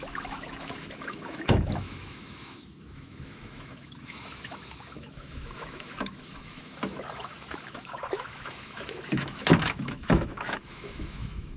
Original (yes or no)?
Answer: no